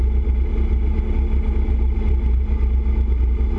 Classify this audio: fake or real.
real